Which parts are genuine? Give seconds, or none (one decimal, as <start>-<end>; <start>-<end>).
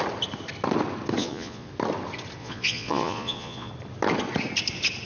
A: 0.0-1.2; 1.7-2.4; 3.7-5.0